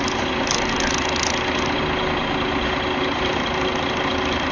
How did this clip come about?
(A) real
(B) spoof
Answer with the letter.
A